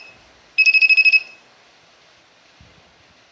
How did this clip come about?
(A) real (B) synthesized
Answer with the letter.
A